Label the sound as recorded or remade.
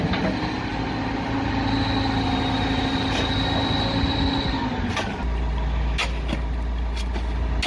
recorded